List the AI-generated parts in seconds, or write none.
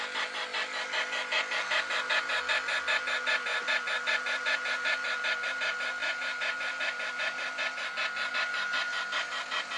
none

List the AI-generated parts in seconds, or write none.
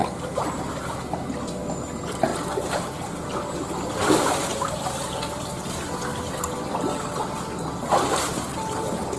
none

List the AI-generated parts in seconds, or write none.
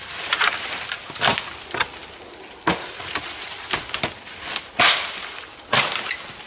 none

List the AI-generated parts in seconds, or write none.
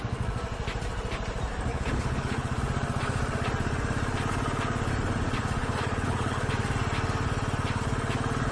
1.7-2.6 (codec, HILCodec); 5.6-6.5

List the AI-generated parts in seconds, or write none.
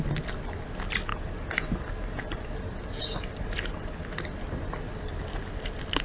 none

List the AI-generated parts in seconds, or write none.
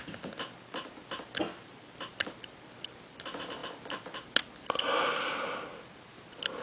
none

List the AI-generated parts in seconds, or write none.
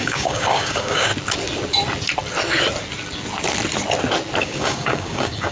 0.0-1.1 (codec, DAC); 4.4-5.5